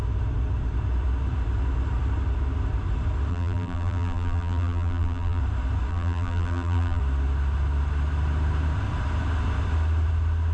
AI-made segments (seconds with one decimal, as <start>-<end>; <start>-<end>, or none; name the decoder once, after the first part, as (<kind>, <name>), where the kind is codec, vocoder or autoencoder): 3.3-5.4 (vocoder, BigVGAN v2); 5.9-7.0